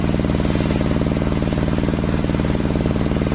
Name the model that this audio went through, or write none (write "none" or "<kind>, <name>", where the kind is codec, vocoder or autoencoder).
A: none